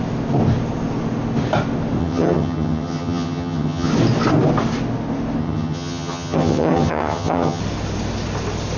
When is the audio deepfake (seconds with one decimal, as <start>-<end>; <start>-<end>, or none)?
2.0-3.9; 5.4-7.6